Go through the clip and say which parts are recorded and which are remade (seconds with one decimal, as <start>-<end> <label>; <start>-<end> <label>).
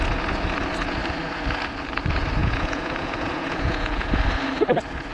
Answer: 0.0-2.4 recorded; 2.4-4.2 remade; 4.2-5.1 recorded